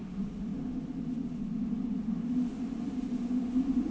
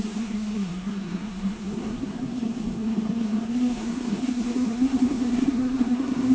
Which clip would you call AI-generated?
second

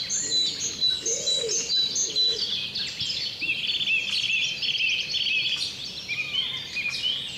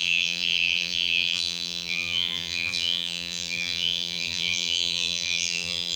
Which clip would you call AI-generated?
second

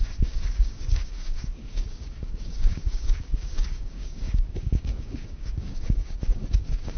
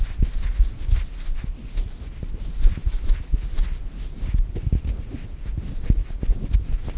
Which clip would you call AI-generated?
first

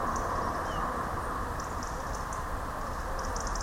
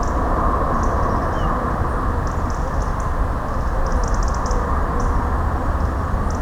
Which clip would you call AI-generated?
first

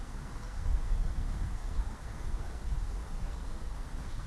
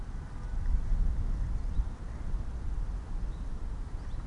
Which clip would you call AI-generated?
first